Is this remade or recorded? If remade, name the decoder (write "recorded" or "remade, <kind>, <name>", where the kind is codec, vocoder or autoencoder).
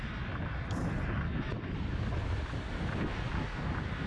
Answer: recorded